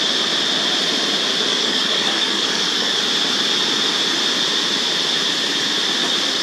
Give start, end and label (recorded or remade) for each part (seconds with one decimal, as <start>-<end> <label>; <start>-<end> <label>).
0.0-1.5 recorded; 1.5-3.0 remade; 3.0-6.4 recorded